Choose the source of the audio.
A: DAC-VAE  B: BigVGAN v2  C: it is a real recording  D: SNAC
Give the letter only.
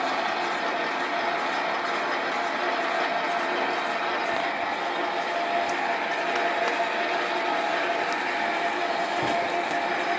C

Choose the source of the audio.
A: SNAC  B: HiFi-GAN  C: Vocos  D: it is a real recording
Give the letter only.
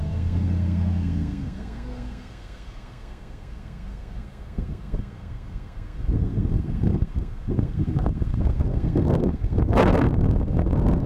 A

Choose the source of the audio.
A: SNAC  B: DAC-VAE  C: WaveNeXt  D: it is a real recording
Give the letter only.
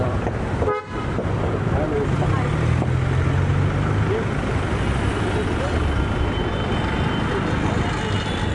D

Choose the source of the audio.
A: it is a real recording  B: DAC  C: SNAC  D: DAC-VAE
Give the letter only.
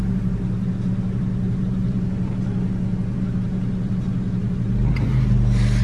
A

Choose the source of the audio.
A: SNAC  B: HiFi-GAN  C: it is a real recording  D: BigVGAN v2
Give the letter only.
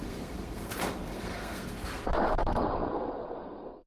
A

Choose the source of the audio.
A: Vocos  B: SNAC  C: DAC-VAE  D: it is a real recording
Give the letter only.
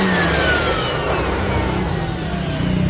D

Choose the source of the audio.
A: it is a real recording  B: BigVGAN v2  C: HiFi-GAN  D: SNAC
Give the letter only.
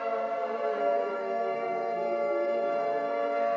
D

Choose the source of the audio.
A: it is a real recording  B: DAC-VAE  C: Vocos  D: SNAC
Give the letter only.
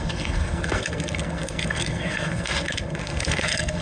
D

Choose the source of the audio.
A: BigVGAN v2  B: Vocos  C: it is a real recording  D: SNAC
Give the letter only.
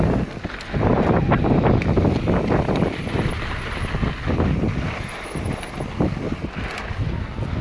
C